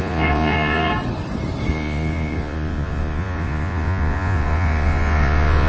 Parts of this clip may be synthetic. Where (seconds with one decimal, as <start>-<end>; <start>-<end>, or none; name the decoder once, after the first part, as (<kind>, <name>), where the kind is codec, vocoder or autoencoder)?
0.0-0.9 (vocoder, Vocos); 1.7-5.7

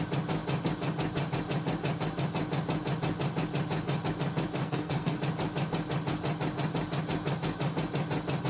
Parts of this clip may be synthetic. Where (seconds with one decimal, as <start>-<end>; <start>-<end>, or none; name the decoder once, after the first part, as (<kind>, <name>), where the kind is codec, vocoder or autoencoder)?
4.6-5.2 (codec, SNAC)